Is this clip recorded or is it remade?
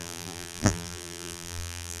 remade